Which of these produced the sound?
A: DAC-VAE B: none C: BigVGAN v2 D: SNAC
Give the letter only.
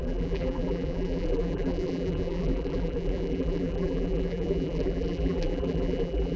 C